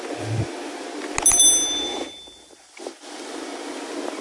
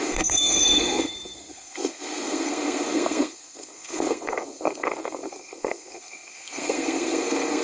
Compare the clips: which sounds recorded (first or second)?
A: first